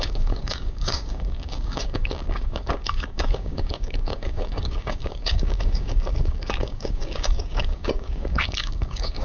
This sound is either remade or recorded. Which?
remade